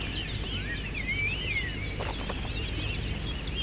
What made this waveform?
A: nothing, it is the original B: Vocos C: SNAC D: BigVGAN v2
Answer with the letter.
A